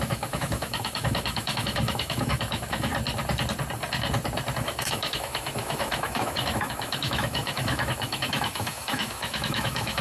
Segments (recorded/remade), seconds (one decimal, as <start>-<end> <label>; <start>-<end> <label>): 0.0-2.9 remade; 2.9-4.6 recorded; 4.6-10.0 remade